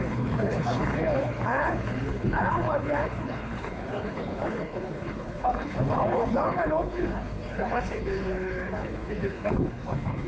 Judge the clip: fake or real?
fake